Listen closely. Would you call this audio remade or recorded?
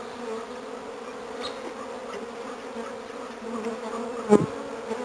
recorded